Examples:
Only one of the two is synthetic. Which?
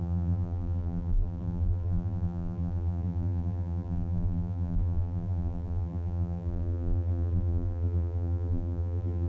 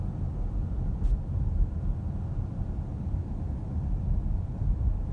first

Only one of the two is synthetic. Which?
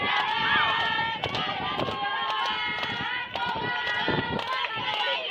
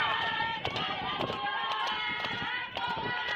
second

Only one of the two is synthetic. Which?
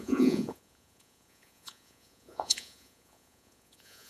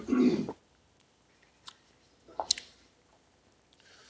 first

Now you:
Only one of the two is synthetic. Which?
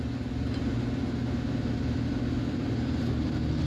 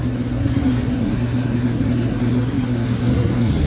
second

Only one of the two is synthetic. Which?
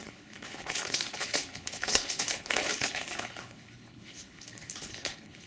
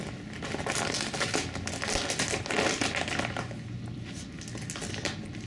first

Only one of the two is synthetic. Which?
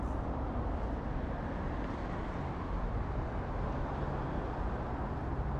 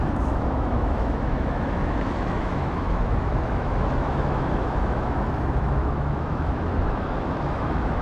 second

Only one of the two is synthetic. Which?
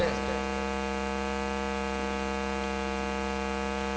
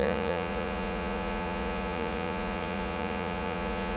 second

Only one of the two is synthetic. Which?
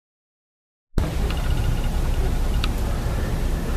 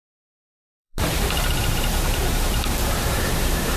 second